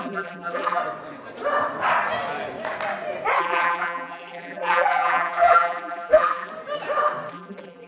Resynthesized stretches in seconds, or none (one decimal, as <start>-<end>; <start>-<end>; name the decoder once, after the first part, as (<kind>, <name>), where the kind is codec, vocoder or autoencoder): 0.0-0.8 (vocoder, BigVGAN v2); 3.4-6.5; 7.3-7.9